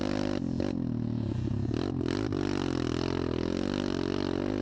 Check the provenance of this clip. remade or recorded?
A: recorded